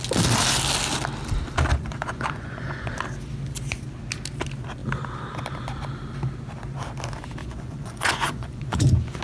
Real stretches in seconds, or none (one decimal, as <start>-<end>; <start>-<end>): 0.0-1.7; 2.9-7.4